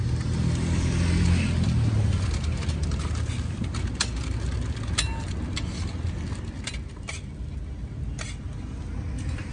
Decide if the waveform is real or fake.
real